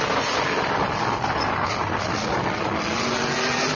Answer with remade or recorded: recorded